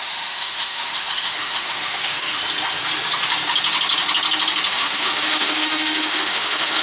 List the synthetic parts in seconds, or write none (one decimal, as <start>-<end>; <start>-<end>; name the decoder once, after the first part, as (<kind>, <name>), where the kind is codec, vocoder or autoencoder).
0.0-2.4 (autoencoder, DAC-VAE); 4.7-6.8